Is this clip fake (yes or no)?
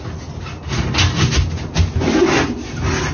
no